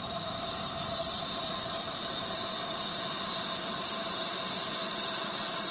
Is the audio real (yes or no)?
no